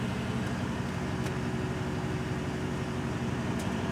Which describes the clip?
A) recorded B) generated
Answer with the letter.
A